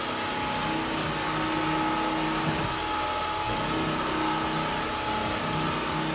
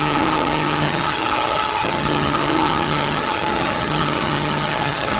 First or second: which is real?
first